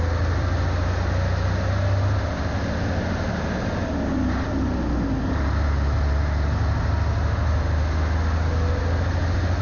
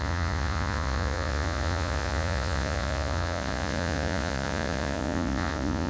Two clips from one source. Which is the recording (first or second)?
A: first